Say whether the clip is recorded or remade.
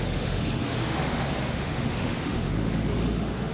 remade